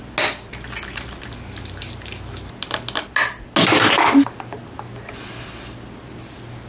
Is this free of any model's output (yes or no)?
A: yes